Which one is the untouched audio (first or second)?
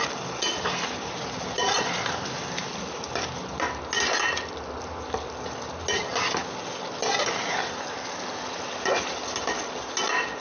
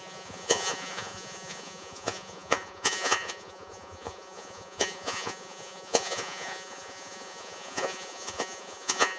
first